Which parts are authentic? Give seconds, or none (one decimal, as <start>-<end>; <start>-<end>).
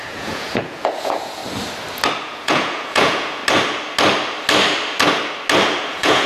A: 1.4-2.2; 3.4-5.8